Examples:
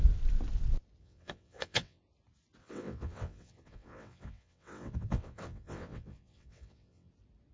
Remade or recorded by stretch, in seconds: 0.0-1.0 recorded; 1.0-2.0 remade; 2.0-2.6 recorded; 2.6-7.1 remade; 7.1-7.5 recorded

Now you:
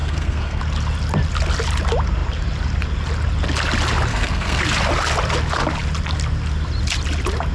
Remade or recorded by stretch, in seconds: 0.0-0.6 remade; 0.6-4.1 recorded; 4.1-4.6 remade; 4.6-7.5 recorded

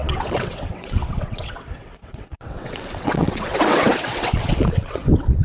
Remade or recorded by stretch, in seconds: 0.0-5.4 remade